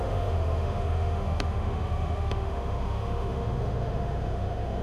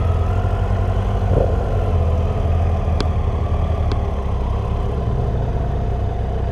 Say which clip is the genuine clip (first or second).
second